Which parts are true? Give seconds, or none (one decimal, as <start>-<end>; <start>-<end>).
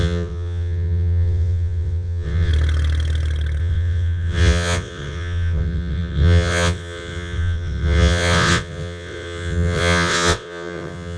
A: 2.5-3.6